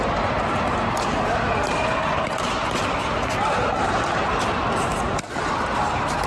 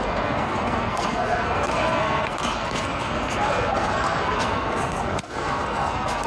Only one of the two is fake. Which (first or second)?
second